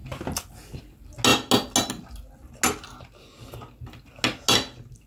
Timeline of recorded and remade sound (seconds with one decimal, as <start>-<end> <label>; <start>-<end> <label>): 0.0-5.1 recorded